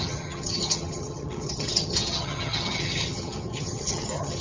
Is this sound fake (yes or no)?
yes